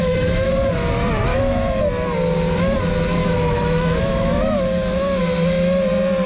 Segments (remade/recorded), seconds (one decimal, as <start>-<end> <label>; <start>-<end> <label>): 0.0-0.5 remade; 0.5-1.3 recorded; 1.3-1.8 remade; 1.8-3.2 recorded; 3.2-5.2 remade; 5.2-6.3 recorded